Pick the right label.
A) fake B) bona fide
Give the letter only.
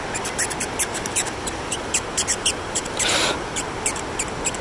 B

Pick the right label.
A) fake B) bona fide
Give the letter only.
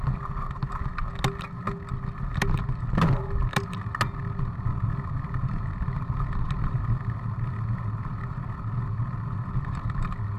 B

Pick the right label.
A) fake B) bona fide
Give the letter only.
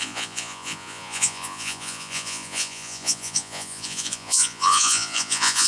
A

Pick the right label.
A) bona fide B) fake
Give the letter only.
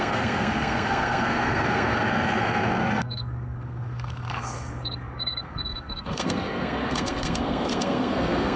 B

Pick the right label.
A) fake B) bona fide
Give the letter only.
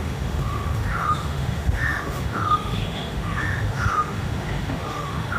A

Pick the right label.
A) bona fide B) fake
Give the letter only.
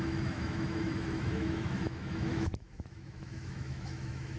B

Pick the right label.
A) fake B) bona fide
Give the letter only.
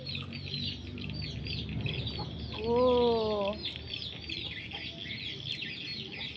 B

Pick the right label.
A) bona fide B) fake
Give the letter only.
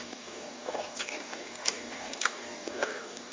B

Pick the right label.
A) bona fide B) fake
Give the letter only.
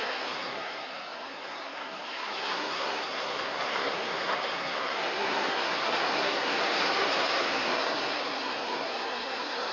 B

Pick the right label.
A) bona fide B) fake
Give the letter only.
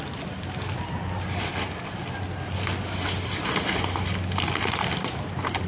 A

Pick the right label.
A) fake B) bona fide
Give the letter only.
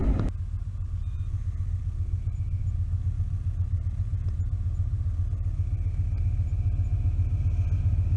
B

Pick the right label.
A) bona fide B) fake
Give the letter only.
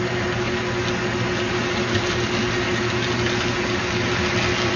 A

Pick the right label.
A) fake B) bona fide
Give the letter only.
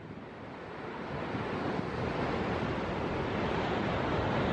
B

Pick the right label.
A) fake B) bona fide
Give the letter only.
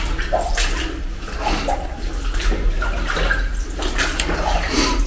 B